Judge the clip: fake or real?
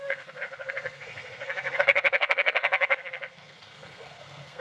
fake